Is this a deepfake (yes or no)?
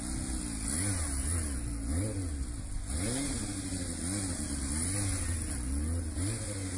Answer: no